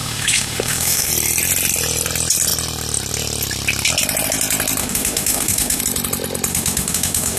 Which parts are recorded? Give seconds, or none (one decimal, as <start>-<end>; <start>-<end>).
1.1-4.8; 5.8-6.5